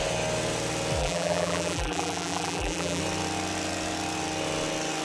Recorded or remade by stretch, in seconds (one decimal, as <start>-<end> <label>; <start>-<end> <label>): 0.0-1.0 recorded; 1.0-3.0 remade; 3.0-5.0 recorded